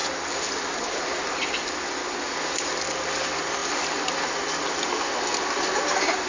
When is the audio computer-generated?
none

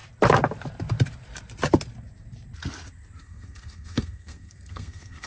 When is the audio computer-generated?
3.2-5.3 (codec, SNAC)

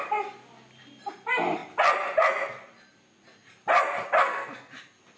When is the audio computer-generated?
4.2-4.7 (codec, SNAC)